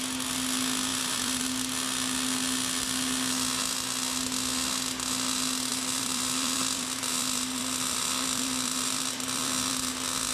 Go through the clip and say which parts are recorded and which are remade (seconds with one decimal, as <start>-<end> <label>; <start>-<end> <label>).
0.0-0.9 recorded; 0.9-1.4 remade; 1.4-5.7 recorded; 5.7-9.9 remade; 9.9-10.3 recorded